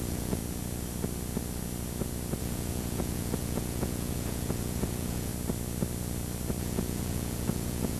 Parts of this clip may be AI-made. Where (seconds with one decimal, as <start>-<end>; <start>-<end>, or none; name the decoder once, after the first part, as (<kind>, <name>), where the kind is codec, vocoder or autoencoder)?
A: 0.0-0.4 (vocoder, Vocos); 2.4-5.3; 6.6-8.0